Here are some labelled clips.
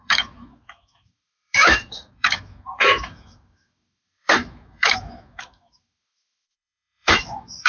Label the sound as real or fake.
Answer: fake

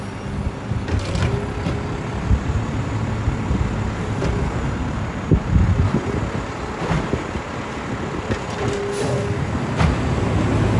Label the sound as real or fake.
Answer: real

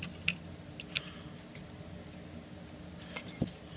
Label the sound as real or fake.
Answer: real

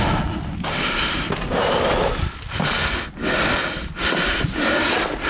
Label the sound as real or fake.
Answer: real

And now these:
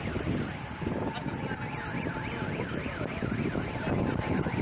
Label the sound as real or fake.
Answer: real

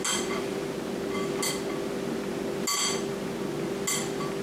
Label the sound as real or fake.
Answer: real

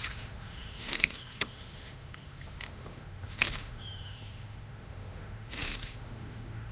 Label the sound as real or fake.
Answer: fake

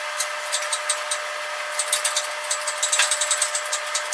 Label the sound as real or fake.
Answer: real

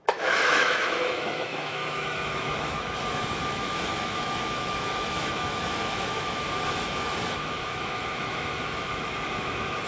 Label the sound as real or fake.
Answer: fake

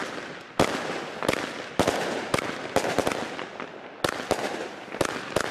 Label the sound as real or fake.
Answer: real